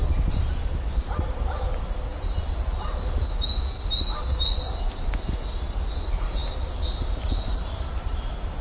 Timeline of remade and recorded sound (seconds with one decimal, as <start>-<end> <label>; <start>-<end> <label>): 0.0-8.6 recorded